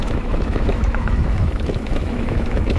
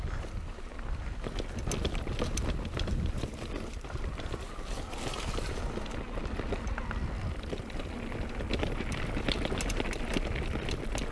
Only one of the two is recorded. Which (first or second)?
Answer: second